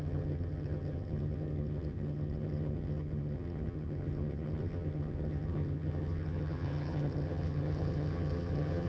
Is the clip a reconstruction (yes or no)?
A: yes